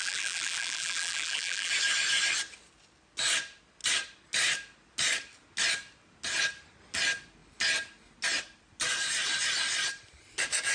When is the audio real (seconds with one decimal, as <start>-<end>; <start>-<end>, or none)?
1.7-10.7